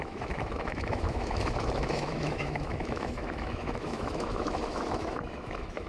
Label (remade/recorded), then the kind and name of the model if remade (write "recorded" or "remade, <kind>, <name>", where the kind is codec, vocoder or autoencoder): remade, autoencoder, DAC-VAE